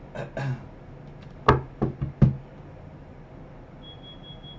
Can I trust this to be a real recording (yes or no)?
yes